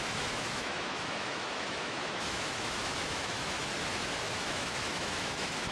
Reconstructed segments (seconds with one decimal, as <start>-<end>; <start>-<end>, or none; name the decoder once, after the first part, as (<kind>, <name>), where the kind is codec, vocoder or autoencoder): 0.0-3.7 (autoencoder, DAC-VAE); 4.2-5.7